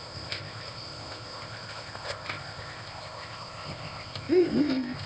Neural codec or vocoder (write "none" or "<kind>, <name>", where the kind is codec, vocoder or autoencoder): codec, ZipCodec